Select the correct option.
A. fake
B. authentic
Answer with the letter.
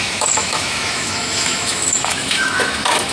A